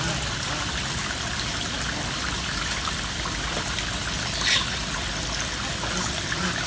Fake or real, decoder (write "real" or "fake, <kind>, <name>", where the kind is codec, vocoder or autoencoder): real